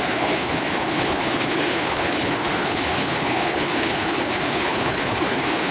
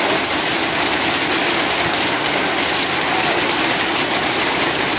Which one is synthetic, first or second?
first